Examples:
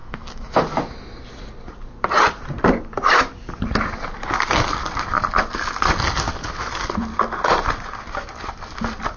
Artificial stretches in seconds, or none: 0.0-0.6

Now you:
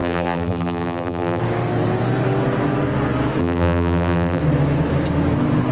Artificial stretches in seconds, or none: 0.0-1.4; 3.4-4.4

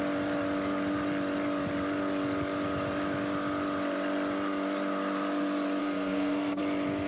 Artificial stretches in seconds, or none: 5.8-6.6

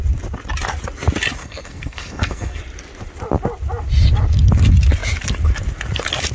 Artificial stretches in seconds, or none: 1.4-2.6

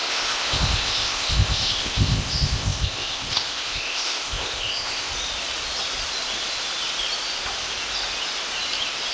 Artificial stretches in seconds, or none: 0.0-5.1

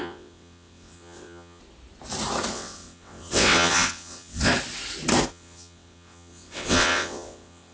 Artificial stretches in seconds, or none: 0.0-1.6; 2.5-4.5; 5.3-7.7